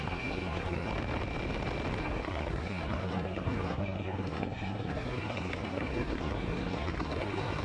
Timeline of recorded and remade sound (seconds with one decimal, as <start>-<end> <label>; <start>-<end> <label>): 0.0-0.9 remade; 0.9-2.0 recorded; 2.0-7.6 remade